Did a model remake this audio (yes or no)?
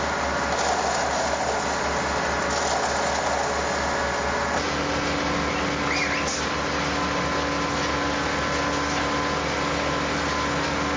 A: no